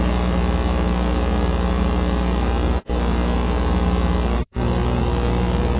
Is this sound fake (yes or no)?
no